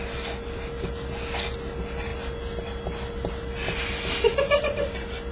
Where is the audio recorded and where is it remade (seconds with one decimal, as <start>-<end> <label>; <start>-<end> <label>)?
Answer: 0.0-5.3 recorded